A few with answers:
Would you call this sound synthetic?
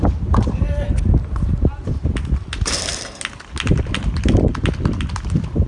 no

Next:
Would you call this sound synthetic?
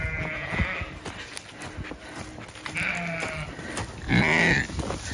no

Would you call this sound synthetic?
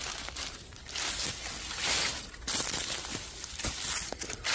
no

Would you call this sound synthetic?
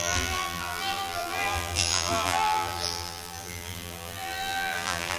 yes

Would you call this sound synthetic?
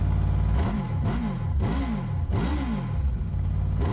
no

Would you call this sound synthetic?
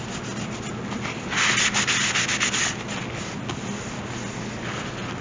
no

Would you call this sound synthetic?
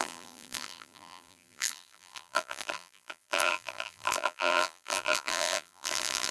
yes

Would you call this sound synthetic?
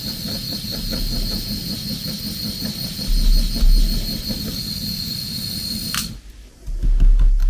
no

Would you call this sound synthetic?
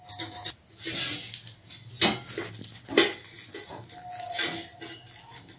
no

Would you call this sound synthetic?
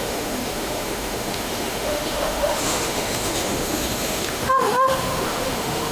yes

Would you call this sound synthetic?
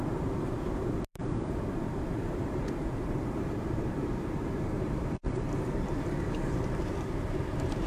yes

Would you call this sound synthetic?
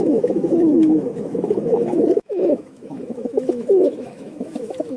yes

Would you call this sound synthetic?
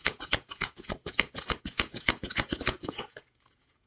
yes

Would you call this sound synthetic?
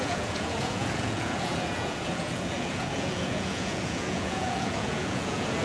yes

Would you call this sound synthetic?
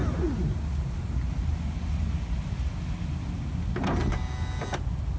no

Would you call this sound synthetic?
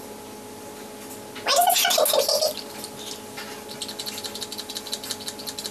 no